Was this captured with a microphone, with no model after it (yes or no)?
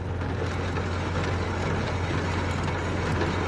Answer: yes